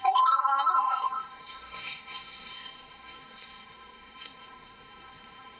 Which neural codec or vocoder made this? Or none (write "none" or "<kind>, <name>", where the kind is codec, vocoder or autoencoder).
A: codec, SNAC